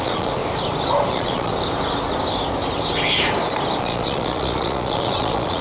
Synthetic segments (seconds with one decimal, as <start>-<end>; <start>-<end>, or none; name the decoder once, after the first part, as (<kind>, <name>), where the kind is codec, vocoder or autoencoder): 0.0-0.4 (vocoder, Vocos); 1.1-1.5; 3.8-5.6